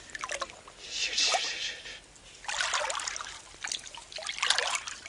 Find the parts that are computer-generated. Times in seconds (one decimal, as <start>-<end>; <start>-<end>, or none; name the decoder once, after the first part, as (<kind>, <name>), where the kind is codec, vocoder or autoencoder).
none